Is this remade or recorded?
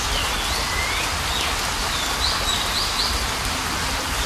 recorded